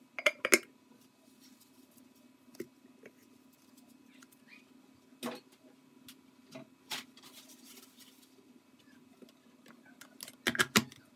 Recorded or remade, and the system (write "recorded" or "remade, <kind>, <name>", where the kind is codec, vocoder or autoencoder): recorded